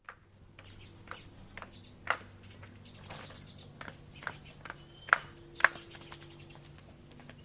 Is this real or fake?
real